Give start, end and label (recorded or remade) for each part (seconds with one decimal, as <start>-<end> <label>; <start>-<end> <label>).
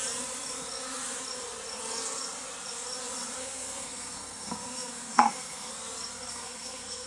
0.0-3.4 recorded; 3.4-5.7 remade; 5.7-6.3 recorded; 6.3-7.1 remade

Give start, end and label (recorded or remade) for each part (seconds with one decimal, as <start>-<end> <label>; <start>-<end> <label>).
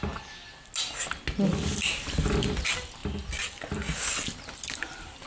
0.0-5.3 recorded